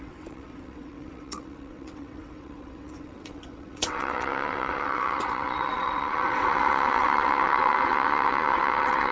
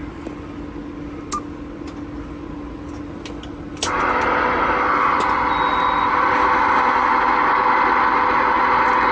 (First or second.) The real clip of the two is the second